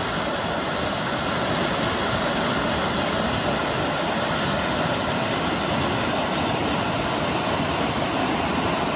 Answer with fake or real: real